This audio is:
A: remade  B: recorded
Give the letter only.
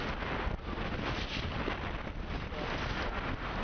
B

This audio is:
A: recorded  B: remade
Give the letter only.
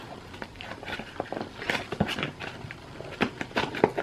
A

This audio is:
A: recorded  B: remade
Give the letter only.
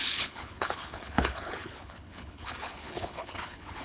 B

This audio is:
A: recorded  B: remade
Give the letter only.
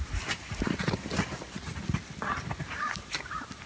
B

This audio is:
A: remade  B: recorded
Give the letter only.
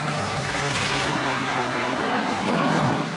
A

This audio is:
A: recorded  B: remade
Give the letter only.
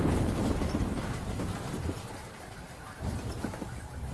A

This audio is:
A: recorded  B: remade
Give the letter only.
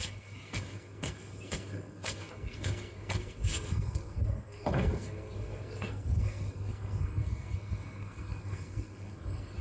B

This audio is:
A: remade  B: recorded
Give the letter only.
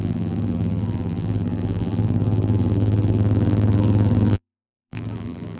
A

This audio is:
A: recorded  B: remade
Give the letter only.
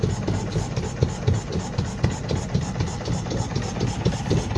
A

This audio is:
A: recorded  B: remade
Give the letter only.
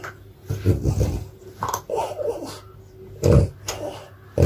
A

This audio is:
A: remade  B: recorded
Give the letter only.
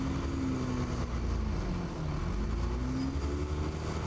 B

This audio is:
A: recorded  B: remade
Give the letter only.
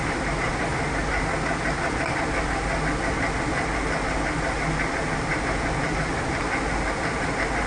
A